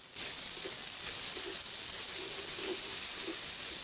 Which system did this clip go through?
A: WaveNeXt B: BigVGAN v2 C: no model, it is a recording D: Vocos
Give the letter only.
C